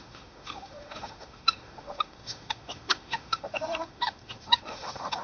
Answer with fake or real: fake